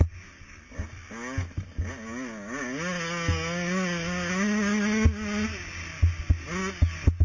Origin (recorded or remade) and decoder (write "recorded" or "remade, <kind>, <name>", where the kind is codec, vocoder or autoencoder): recorded